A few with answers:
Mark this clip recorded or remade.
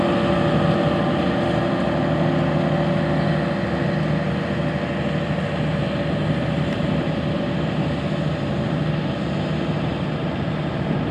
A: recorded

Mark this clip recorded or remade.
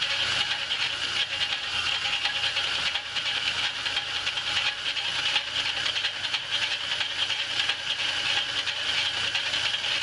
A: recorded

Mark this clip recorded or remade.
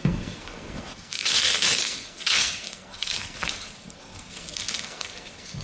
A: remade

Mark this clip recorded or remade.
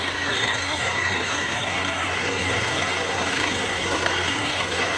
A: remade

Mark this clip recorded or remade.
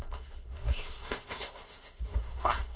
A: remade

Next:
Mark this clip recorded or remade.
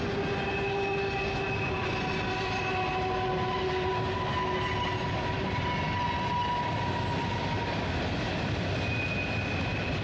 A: recorded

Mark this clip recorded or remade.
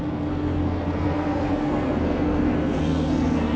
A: remade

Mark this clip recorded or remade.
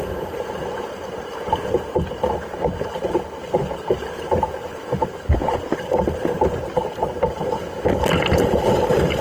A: recorded